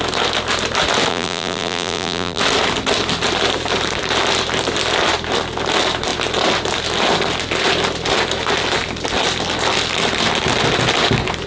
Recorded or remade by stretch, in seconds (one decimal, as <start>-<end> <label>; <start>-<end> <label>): 0.0-1.1 recorded; 1.1-2.4 remade; 2.4-11.5 recorded